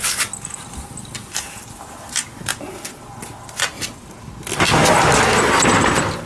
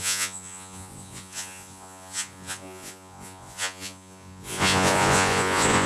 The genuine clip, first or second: first